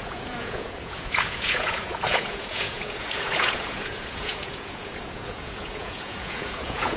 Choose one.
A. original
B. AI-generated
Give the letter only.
B